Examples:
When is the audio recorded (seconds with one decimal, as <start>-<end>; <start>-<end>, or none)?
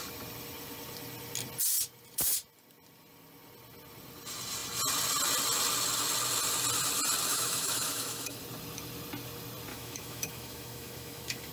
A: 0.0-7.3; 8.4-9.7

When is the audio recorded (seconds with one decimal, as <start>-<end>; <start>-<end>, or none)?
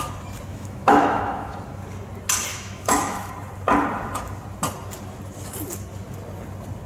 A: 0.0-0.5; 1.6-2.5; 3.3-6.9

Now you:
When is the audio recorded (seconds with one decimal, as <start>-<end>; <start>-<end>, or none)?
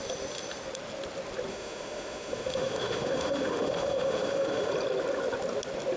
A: 0.0-1.5; 4.7-6.0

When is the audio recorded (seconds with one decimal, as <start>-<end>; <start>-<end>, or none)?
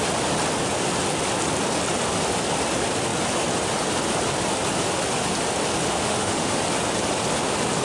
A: 0.0-6.0; 6.6-7.8